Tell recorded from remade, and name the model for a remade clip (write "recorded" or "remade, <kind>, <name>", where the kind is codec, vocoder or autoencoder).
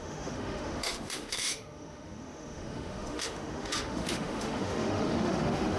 remade, autoencoder, DAC-VAE